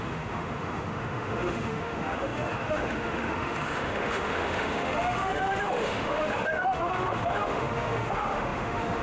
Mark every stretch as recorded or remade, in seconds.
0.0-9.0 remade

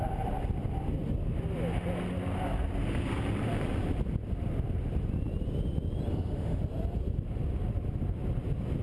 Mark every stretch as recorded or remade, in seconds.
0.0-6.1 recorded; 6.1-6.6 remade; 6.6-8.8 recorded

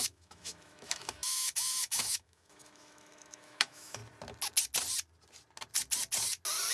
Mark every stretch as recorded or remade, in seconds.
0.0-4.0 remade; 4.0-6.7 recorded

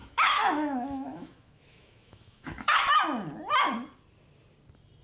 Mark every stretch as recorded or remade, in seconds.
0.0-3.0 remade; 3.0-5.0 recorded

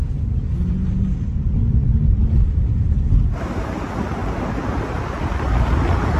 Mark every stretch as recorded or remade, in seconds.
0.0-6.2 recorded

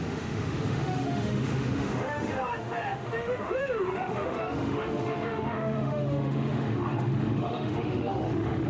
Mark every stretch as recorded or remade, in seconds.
0.0-8.7 remade